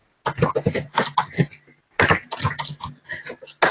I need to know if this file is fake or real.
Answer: real